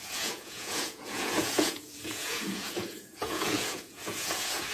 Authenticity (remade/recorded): remade